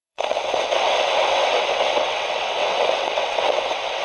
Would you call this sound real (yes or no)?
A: no